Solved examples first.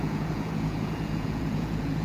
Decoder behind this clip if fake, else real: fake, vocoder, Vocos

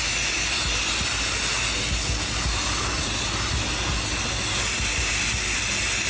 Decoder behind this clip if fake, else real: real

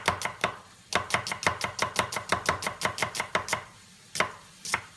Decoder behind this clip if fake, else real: real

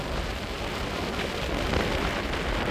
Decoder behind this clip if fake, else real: real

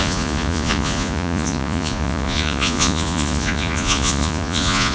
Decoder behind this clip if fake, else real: fake, vocoder, Vocos